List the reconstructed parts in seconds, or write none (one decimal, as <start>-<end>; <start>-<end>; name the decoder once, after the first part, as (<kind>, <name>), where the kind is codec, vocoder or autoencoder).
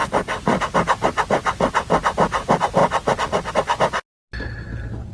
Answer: 0.0-0.6 (vocoder, BigVGAN v2); 2.8-3.5